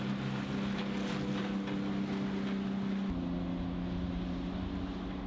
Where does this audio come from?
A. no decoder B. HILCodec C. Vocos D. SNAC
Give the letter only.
A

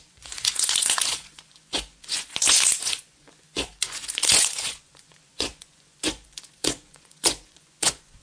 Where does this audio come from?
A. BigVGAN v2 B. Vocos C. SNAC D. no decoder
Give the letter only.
B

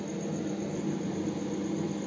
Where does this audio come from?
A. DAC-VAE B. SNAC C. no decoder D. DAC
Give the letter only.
C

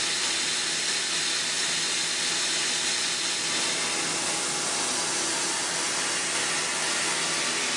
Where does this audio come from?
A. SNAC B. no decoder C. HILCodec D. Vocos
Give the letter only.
B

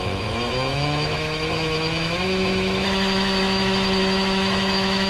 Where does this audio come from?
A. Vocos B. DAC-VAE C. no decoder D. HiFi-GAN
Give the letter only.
B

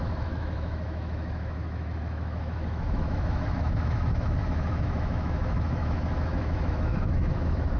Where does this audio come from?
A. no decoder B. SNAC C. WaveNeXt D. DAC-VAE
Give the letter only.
D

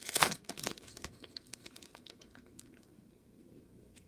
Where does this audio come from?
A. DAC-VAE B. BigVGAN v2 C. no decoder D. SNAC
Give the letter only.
D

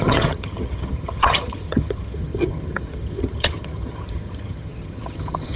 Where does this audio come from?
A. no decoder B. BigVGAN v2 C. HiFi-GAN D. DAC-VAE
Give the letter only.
C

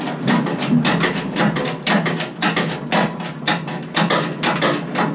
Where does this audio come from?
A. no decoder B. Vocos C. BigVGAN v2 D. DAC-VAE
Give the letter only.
A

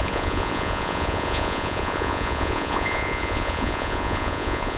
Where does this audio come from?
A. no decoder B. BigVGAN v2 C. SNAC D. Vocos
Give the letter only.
D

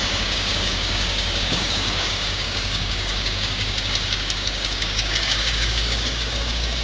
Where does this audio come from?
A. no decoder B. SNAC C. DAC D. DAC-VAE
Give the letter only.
C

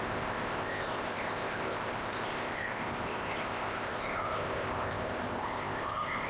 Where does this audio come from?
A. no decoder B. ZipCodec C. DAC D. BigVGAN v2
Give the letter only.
B